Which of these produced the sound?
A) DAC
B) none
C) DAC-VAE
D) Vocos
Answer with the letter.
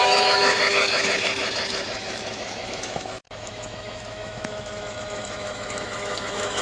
C